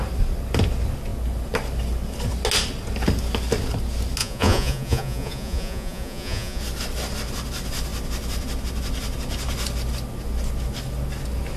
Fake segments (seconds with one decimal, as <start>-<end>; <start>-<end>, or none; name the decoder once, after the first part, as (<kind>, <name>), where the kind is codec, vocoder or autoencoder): 4.2-6.6 (vocoder, Vocos)